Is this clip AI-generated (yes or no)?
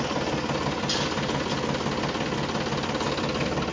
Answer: no